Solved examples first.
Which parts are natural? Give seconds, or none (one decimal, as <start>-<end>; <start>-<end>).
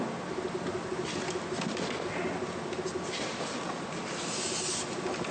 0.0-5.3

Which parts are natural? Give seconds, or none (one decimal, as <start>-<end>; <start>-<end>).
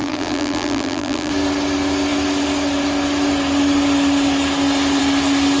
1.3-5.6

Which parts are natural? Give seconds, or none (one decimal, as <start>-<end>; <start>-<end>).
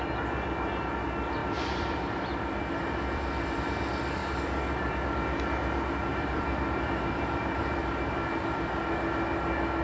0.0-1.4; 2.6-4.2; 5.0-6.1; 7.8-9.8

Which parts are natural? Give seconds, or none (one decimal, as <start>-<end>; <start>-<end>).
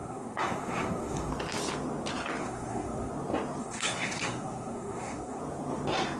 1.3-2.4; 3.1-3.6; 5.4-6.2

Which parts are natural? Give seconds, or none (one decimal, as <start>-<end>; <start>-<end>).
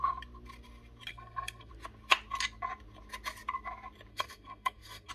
0.0-1.1; 1.7-4.1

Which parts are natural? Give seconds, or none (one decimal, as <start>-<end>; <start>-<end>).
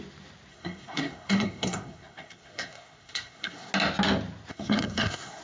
0.0-0.5; 3.7-4.5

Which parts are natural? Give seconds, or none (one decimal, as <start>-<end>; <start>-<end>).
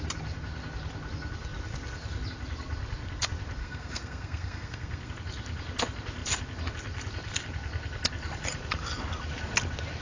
0.0-3.6; 5.1-10.0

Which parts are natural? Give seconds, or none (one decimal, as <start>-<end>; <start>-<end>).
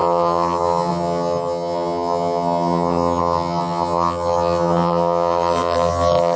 none